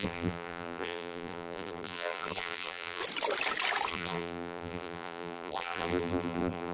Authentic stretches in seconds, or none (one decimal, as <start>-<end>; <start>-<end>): 3.0-3.9